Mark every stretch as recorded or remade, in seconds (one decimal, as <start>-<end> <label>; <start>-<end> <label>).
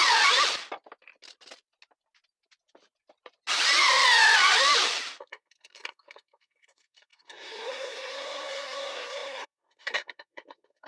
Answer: 0.0-5.2 recorded; 5.2-10.9 remade